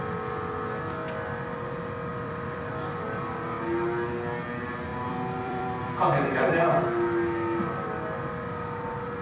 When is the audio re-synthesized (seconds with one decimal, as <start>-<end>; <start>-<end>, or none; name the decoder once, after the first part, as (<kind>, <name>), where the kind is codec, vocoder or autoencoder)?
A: 2.1-2.7 (vocoder, BigVGAN v2); 4.9-6.5